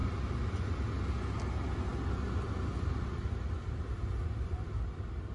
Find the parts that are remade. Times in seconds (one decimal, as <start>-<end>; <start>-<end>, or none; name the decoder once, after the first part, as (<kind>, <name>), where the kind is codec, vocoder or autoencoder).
none